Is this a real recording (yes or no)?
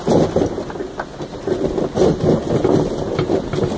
yes